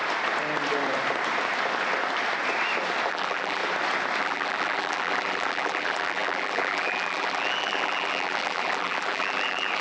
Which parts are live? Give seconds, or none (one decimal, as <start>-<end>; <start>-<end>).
0.0-3.1; 3.6-4.2